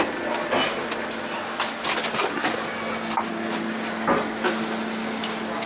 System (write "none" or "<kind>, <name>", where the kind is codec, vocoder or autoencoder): none